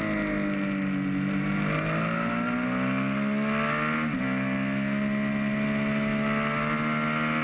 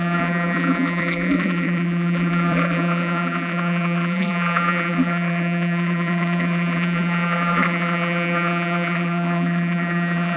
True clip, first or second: first